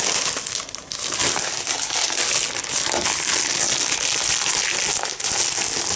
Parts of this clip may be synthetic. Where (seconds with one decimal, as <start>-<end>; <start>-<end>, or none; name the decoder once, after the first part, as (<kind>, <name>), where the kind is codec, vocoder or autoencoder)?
none